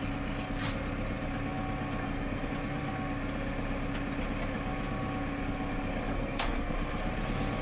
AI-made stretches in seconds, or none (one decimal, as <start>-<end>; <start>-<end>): 2.0-2.5; 6.1-6.7